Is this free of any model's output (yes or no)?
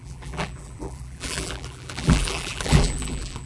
no